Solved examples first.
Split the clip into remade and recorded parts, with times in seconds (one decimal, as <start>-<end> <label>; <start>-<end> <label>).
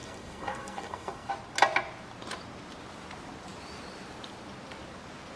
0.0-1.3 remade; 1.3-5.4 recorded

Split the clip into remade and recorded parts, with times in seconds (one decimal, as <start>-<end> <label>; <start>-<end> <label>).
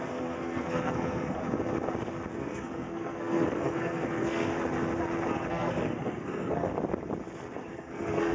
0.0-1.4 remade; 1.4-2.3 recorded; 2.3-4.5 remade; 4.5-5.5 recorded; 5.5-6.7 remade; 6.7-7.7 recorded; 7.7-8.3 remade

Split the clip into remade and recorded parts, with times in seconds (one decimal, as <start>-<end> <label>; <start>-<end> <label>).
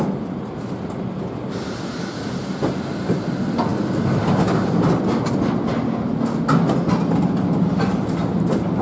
0.0-8.8 recorded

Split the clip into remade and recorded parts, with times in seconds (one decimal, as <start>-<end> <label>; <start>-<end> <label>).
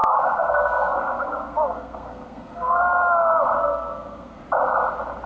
0.0-2.8 remade; 2.8-3.6 recorded; 3.6-4.4 remade; 4.4-5.3 recorded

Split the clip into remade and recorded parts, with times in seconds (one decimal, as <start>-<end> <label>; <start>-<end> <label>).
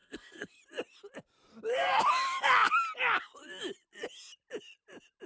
0.0-0.6 remade; 0.6-1.5 recorded; 1.5-2.0 remade; 2.0-5.3 recorded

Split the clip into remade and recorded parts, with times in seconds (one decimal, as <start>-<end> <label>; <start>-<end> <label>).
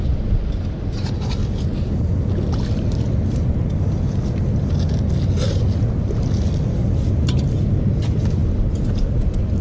0.0-9.6 recorded